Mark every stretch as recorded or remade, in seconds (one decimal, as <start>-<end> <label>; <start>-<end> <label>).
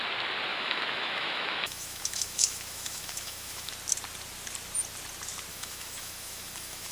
0.0-0.5 recorded; 0.5-3.7 remade; 3.7-5.5 recorded; 5.5-6.9 remade